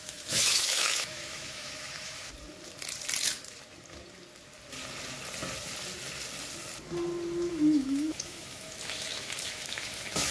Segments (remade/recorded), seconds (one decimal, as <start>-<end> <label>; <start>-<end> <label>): 0.0-2.3 remade; 2.3-7.5 recorded; 7.5-10.3 remade